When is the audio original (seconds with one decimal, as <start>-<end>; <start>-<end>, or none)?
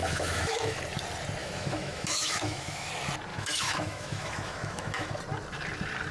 0.8-1.4; 2.9-3.3; 5.2-6.1